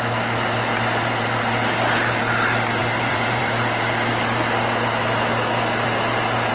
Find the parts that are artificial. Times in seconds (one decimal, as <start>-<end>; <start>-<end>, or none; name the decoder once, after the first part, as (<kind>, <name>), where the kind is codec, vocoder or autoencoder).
2.8-3.4 (vocoder, BigVGAN v2)